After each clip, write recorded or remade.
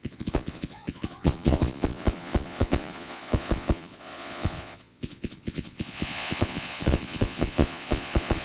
remade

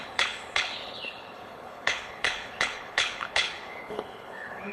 remade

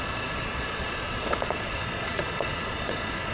remade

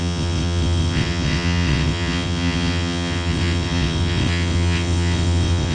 remade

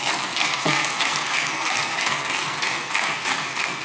remade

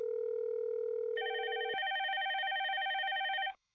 remade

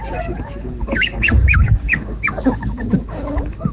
remade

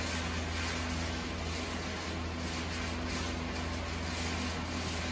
recorded